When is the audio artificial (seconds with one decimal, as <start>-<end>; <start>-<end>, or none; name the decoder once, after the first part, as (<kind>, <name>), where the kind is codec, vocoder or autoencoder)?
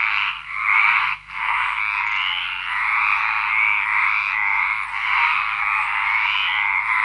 0.0-1.8 (codec, SNAC); 4.9-5.6